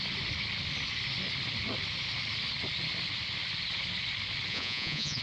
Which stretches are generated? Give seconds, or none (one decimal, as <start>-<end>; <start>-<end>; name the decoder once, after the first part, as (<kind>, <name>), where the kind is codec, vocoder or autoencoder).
4.5-5.2 (vocoder, Vocos)